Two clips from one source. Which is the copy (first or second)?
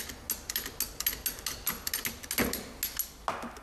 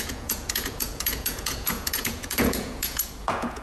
second